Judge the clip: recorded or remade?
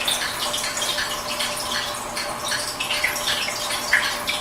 recorded